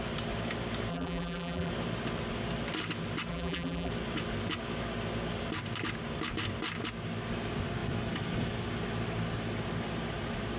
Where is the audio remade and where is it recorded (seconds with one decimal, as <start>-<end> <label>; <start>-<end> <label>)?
0.0-0.9 recorded; 0.9-1.7 remade; 1.7-3.3 recorded; 3.3-3.9 remade; 3.9-10.6 recorded